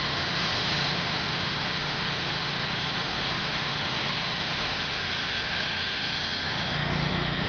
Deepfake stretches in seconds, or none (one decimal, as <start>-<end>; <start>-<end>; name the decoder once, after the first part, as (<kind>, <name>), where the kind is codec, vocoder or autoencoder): 0.0-7.5 (autoencoder, DAC-VAE)